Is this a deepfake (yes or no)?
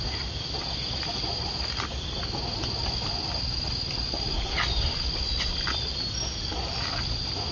no